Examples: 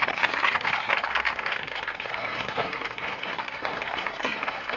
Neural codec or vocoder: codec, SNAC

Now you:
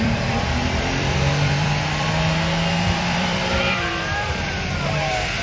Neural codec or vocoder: vocoder, BigVGAN v2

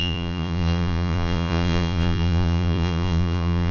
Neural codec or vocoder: vocoder, Vocos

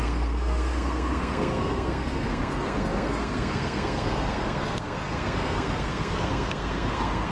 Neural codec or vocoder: codec, SNAC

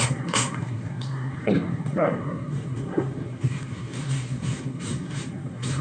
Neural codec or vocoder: codec, SNAC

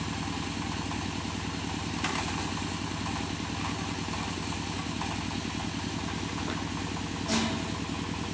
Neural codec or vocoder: none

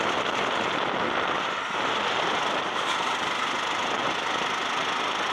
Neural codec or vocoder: none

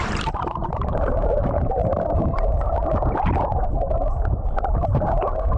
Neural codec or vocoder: vocoder, BigVGAN v2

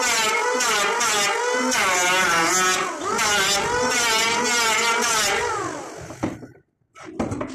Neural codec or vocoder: none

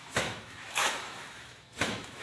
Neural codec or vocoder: autoencoder, DAC-VAE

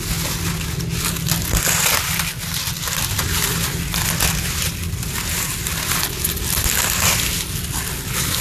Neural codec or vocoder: none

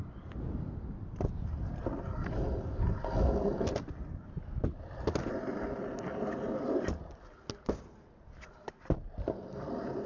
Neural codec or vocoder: none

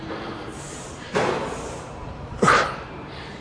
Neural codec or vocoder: vocoder, BigVGAN v2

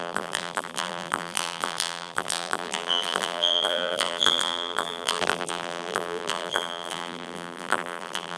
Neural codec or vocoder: vocoder, BigVGAN v2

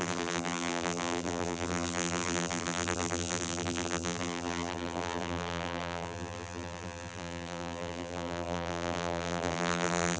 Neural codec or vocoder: vocoder, BigVGAN v2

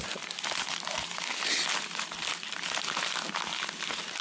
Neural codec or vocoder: none